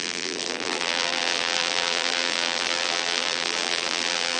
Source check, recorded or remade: remade